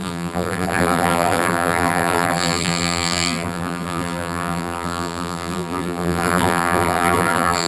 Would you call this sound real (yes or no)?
no